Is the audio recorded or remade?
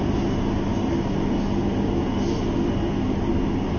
recorded